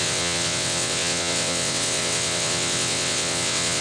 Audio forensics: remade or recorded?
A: remade